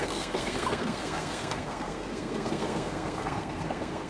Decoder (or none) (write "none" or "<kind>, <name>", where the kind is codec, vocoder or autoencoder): codec, SNAC